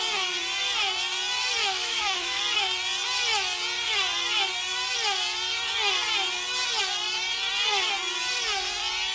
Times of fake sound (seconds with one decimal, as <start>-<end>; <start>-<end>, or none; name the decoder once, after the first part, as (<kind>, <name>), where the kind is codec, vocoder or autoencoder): 1.6-2.4 (autoencoder, DAC-VAE)